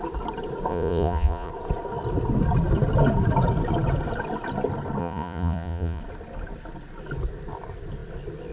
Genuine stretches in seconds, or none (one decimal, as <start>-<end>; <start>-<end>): 0.0-0.7; 1.5-5.0; 6.0-8.5